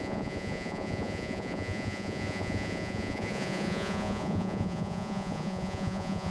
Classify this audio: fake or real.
fake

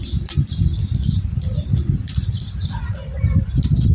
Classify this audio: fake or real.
real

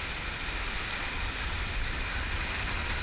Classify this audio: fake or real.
real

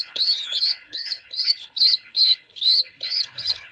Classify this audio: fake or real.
fake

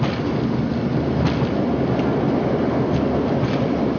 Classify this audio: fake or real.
real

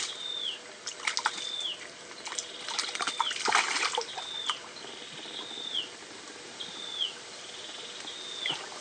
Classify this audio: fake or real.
real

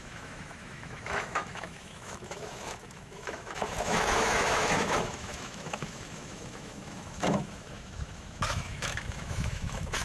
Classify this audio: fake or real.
fake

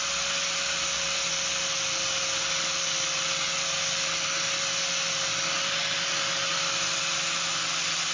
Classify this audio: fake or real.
real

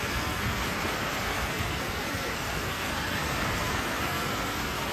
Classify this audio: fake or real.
fake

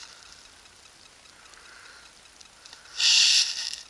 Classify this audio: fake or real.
real